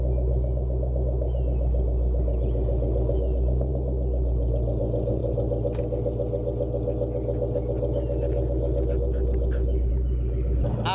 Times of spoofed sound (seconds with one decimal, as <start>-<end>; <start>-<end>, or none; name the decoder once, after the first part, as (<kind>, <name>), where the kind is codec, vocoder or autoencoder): none